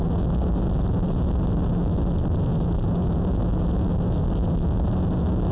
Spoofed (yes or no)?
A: no